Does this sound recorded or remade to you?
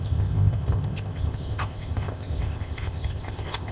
remade